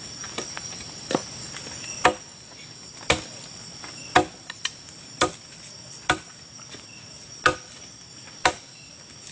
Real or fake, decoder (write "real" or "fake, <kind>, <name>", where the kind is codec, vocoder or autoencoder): real